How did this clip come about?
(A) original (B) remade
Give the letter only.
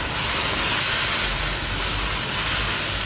A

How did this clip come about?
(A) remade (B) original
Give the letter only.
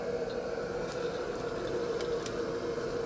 B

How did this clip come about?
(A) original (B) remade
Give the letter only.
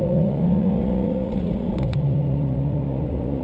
B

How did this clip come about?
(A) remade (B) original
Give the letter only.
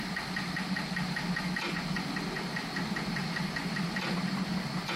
B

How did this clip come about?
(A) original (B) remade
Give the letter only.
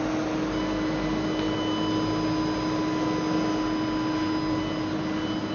A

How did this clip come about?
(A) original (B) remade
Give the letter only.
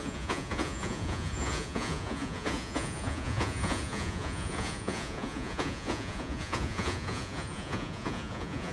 B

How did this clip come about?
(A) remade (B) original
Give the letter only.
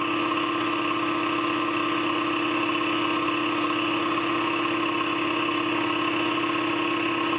B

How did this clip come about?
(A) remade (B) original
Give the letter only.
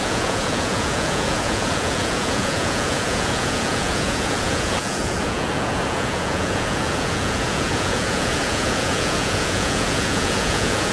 A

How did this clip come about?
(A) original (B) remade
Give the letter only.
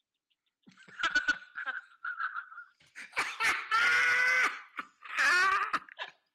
A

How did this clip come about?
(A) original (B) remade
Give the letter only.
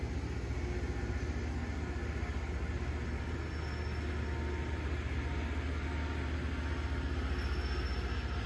A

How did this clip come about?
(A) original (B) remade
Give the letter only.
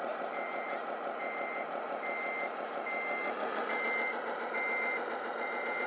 A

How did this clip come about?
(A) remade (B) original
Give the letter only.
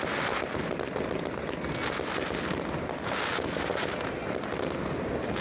B